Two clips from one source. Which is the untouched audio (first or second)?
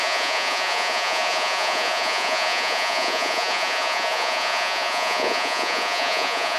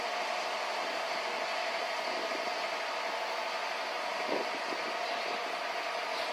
second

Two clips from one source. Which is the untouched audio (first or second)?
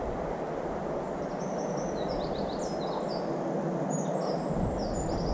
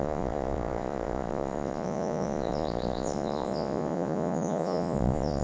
first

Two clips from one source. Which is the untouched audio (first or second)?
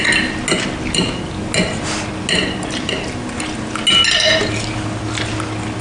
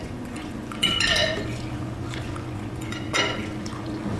first